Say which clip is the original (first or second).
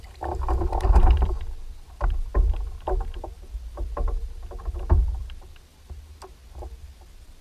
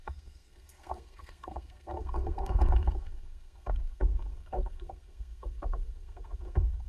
first